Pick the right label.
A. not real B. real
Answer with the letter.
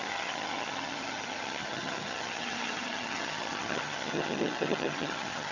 A